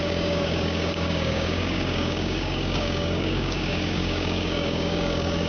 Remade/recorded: remade